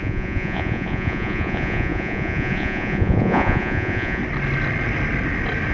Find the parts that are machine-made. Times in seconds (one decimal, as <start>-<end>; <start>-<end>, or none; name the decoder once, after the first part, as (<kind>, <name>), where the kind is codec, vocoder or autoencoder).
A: 0.0-4.2 (vocoder, Vocos)